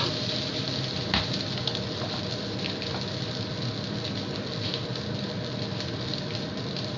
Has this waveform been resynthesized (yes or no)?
no